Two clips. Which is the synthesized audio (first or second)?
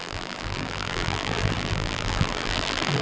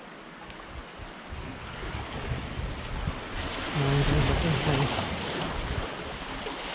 first